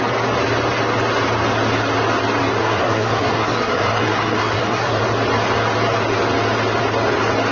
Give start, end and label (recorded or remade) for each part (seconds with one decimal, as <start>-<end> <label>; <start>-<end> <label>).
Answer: 0.0-2.6 recorded; 2.6-5.0 remade; 5.0-7.5 recorded